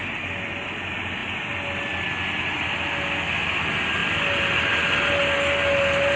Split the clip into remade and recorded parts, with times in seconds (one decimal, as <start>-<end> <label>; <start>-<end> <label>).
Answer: 0.0-6.2 recorded

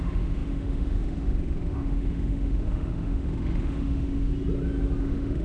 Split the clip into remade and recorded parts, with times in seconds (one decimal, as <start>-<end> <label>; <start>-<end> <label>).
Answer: 0.0-4.3 remade; 4.3-5.0 recorded; 5.0-5.4 remade